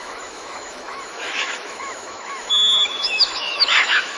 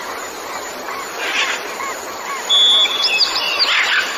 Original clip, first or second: second